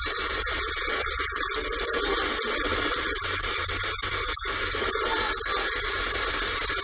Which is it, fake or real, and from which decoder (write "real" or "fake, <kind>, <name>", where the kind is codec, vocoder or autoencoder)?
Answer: real